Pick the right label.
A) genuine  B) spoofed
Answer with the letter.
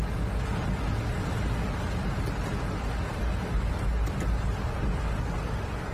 A